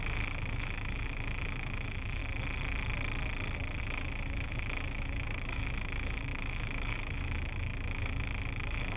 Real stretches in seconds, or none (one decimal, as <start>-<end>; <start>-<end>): 2.2-3.8